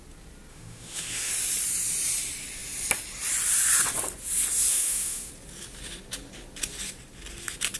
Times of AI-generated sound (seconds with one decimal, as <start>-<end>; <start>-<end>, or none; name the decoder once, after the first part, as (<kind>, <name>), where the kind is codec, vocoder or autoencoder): 0.5-1.3 (autoencoder, DAC-VAE); 4.7-5.3